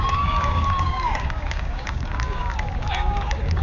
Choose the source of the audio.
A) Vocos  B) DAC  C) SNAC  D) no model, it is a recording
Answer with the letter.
B